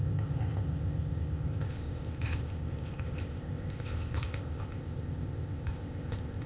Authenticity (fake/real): fake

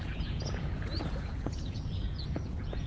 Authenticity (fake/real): fake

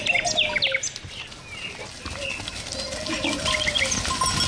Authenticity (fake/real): real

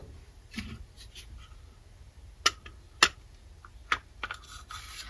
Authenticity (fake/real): real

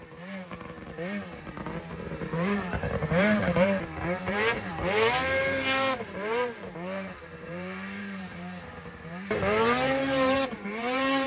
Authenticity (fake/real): fake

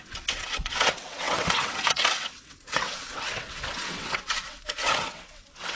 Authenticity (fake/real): fake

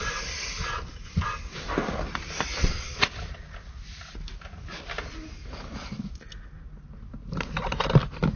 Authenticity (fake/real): real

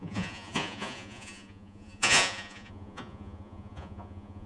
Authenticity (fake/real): fake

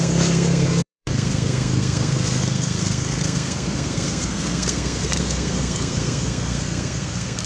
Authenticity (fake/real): fake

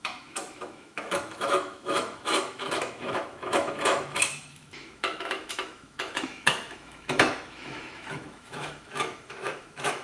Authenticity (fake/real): fake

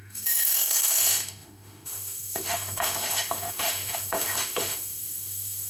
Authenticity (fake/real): fake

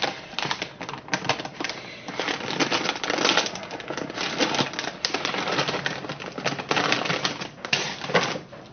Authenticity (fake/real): real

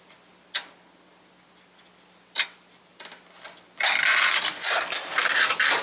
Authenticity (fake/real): real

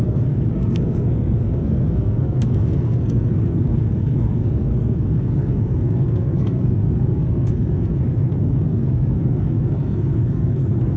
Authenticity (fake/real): fake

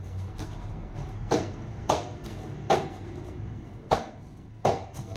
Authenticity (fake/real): fake